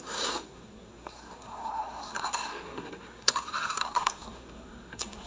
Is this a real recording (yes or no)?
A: no